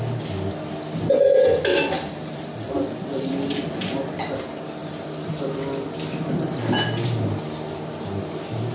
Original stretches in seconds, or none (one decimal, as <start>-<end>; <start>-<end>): 0.0-1.7; 3.3-4.8; 5.3-8.7